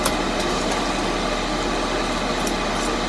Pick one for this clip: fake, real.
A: real